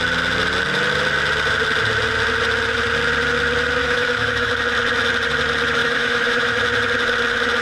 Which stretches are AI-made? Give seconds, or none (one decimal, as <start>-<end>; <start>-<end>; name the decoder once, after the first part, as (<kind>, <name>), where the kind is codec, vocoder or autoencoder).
3.8-4.5 (autoencoder, DAC-VAE); 5.8-6.6